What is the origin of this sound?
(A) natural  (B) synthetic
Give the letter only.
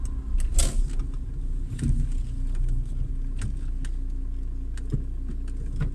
A